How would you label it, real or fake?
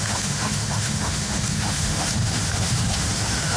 fake